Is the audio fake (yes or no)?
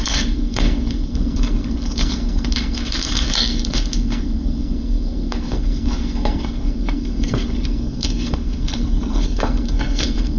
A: yes